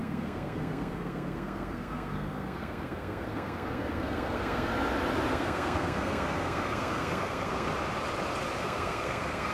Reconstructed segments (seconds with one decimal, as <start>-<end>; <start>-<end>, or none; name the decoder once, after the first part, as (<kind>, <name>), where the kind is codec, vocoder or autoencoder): 0.0-4.7 (codec, SNAC); 5.3-7.7; 8.6-9.5

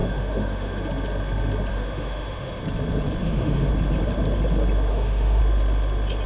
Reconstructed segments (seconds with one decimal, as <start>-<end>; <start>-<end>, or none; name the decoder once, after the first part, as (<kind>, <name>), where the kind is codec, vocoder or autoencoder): 0.0-0.8 (autoencoder, DAC-VAE); 1.7-2.6; 3.2-3.7; 4.9-5.4

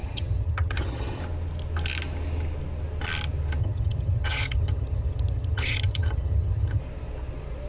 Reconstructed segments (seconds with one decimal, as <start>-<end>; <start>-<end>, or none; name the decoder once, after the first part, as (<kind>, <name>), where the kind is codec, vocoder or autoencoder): 0.0-1.2 (vocoder, HiFi-GAN); 3.6-6.8

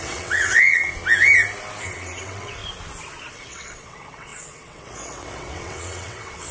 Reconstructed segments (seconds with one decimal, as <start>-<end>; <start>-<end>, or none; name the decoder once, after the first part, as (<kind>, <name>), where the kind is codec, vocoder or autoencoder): 0.0-0.9 (vocoder, WaveNeXt); 1.8-2.6; 3.3-6.5

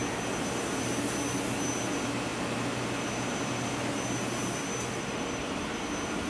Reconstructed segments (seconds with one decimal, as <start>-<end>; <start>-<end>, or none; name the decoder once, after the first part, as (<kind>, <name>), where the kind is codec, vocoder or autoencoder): none

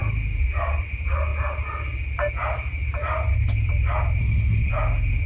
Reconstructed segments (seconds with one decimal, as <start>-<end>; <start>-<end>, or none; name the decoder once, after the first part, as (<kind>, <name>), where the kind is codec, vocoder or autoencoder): 4.2-4.7 (codec, SNAC)

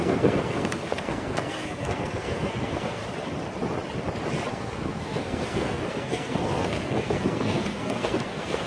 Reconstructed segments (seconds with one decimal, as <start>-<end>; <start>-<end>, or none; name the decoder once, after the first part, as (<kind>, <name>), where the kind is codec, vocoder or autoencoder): 0.0-3.0 (codec, SNAC); 4.5-8.7